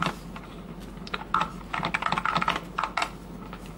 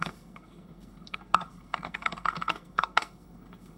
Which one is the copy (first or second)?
second